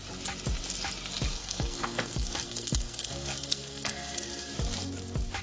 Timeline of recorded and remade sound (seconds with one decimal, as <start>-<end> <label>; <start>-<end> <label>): 0.0-1.3 recorded; 1.3-4.5 remade; 4.5-5.4 recorded